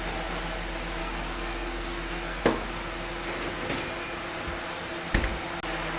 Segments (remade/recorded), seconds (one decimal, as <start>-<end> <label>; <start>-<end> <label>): 0.0-1.0 recorded; 1.0-2.4 remade; 2.4-6.0 recorded